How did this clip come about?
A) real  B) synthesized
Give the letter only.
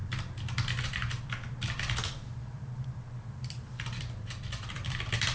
B